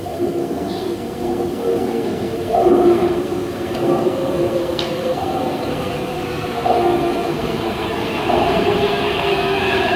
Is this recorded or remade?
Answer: remade